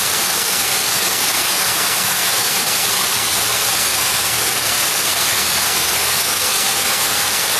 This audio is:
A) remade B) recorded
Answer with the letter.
A